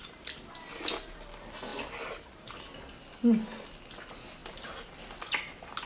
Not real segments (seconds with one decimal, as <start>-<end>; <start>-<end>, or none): 1.7-2.8